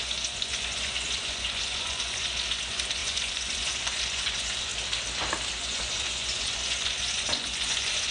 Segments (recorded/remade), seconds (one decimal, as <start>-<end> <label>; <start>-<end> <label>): 0.0-4.7 remade; 4.7-5.6 recorded; 5.6-8.1 remade